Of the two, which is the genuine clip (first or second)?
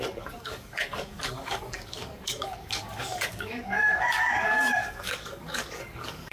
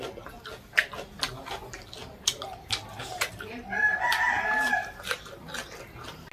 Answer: second